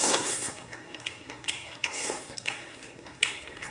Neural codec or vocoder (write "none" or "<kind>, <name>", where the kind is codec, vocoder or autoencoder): codec, SNAC